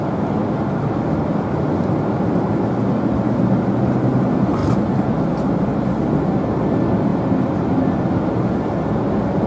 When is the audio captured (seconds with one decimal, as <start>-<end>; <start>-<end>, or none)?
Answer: 0.0-9.5